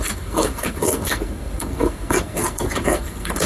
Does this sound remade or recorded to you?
remade